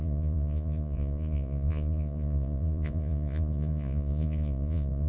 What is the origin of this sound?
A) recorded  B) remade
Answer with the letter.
B